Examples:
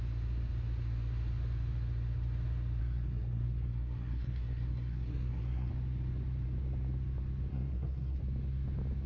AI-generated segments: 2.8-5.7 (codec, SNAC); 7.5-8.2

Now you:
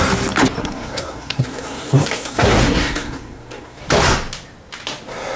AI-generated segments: 0.6-3.8 (codec, SNAC)

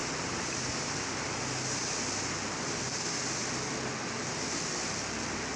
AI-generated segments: none